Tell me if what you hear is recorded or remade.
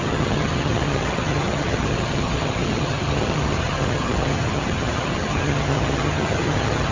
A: remade